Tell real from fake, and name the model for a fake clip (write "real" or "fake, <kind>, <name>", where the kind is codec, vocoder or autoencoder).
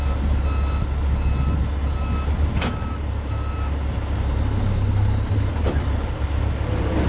real